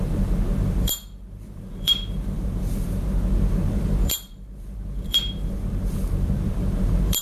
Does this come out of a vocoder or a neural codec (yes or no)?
yes